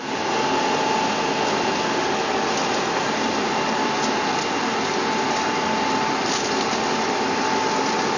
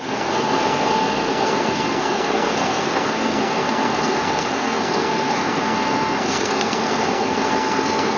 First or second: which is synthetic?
second